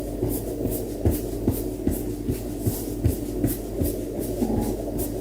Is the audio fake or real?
real